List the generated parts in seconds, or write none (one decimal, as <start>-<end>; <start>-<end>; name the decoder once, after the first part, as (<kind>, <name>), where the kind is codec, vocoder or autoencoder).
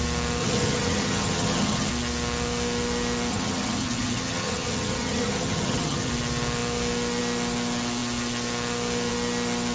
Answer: 0.4-1.9 (vocoder, HiFi-GAN); 3.3-6.1